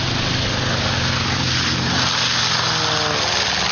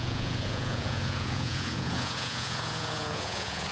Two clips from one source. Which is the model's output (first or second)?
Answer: second